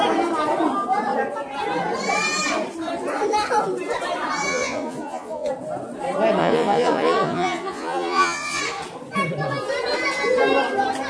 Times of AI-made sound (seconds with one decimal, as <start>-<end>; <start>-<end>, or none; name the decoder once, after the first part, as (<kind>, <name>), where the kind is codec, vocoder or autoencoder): 4.5-5.5 (vocoder, Vocos); 6.4-8.6